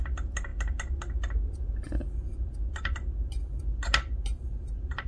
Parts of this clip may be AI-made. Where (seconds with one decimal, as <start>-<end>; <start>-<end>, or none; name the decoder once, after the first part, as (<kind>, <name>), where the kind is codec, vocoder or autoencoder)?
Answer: none